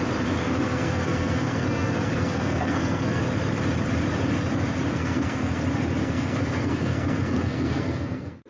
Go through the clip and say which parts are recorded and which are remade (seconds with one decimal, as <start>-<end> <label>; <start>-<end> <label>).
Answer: 0.0-0.4 recorded; 0.4-3.2 remade; 3.2-4.9 recorded; 4.9-5.6 remade; 5.6-6.0 recorded; 6.0-8.5 remade